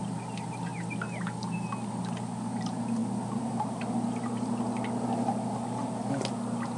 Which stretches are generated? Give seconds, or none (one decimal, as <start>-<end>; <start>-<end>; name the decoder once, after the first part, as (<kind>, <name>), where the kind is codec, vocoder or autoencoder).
none